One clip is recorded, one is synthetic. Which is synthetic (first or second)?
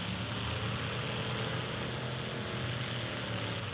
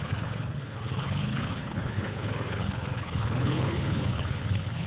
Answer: second